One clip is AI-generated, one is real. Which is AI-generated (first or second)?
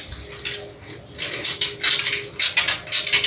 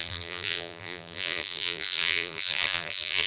second